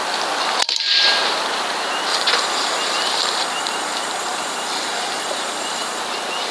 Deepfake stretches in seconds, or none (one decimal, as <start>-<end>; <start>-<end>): 2.1-6.0